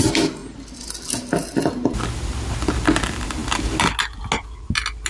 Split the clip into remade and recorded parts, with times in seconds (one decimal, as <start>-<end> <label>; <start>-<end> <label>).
0.0-5.1 recorded